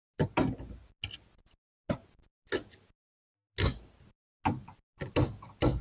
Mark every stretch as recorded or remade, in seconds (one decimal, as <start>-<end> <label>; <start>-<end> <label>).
0.0-5.8 recorded